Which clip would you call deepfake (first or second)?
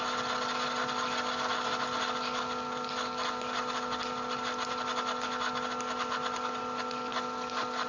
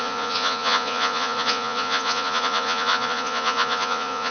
second